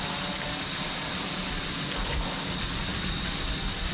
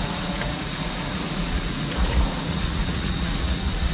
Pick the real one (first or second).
first